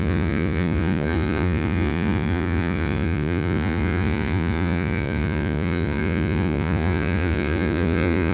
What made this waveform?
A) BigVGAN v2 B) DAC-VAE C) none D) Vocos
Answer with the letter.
D